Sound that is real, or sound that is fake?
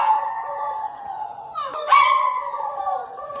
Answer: fake